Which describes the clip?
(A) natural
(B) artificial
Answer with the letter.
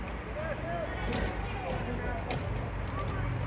A